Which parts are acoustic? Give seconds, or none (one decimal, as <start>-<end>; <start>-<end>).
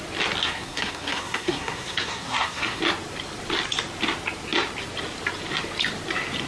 0.0-0.4; 2.8-6.5